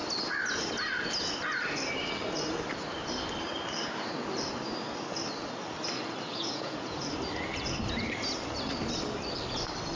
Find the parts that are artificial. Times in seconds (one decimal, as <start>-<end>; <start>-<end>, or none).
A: 6.3-7.0